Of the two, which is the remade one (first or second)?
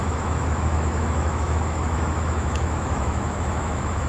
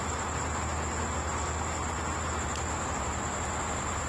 first